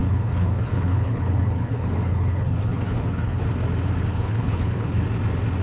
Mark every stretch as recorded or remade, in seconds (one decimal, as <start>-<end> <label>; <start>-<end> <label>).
0.0-3.4 remade; 3.4-4.1 recorded; 4.1-5.0 remade; 5.0-5.6 recorded